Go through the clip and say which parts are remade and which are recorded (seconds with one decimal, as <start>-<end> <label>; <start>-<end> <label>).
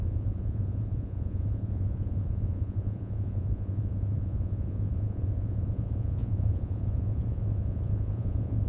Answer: 0.0-8.7 remade